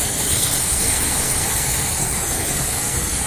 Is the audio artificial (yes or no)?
yes